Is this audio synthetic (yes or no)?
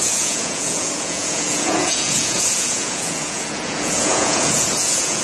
yes